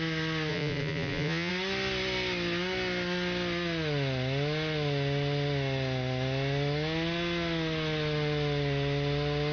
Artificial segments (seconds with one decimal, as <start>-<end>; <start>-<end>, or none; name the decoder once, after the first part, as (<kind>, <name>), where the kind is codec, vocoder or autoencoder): 0.5-1.5 (vocoder, Vocos)